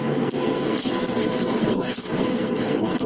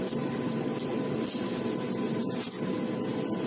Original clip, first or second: second